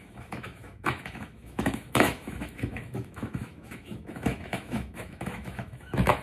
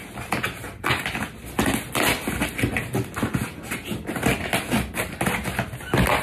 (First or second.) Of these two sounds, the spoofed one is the first